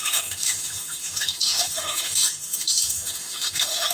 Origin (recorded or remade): remade